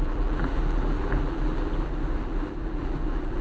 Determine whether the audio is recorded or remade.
remade